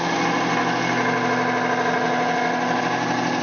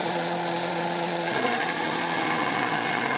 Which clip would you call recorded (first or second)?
first